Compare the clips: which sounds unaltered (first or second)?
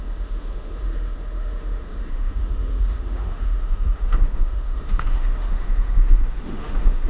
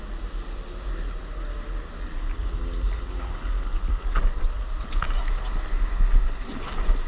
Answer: second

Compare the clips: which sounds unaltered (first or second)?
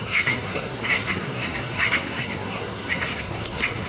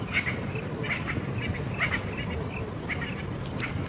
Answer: second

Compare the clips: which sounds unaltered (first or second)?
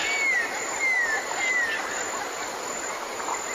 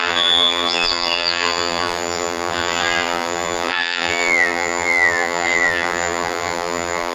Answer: first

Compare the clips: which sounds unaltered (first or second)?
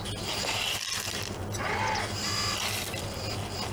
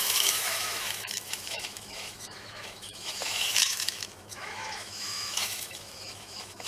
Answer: first